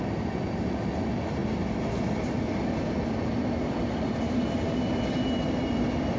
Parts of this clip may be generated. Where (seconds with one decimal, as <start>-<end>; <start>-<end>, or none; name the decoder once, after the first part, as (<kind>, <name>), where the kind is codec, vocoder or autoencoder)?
none